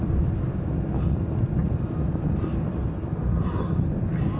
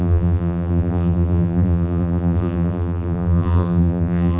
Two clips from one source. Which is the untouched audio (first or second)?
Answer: first